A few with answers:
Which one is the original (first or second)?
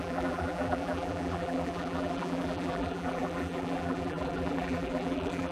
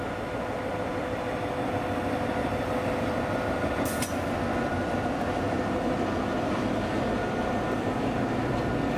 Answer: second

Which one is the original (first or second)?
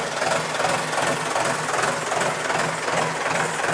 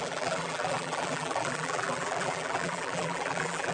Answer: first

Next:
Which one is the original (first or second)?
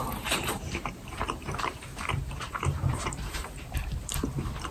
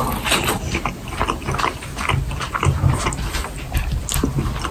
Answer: second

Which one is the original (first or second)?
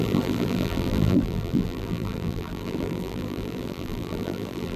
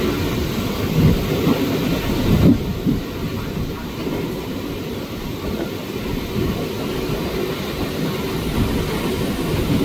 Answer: second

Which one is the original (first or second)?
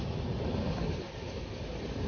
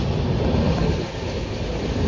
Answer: second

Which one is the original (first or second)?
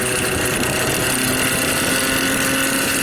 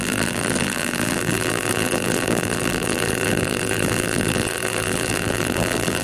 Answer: first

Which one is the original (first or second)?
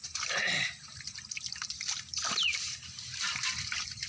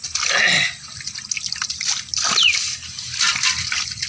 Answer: second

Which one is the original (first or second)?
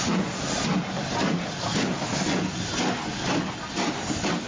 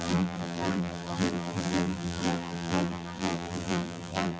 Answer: first